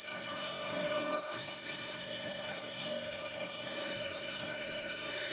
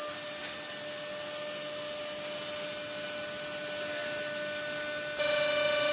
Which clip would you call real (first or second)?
second